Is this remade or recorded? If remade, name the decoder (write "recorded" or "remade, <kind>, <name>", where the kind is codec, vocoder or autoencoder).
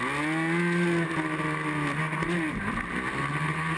recorded